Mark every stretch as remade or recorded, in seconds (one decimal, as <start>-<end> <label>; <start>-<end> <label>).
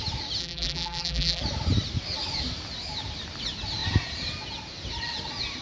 0.0-0.4 recorded; 0.4-1.4 remade; 1.4-5.6 recorded